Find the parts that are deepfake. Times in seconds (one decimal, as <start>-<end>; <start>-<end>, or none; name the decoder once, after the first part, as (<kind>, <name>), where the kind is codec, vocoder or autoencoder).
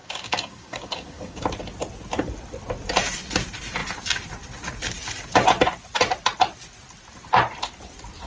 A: 0.0-1.4 (codec, DAC)